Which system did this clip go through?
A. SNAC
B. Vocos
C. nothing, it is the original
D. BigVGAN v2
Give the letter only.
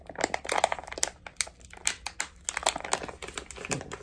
C